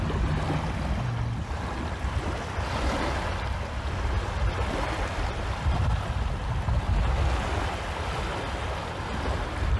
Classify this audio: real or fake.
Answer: real